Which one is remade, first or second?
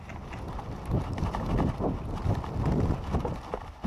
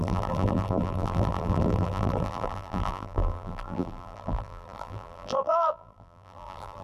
second